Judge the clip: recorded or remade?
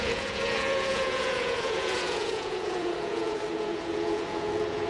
remade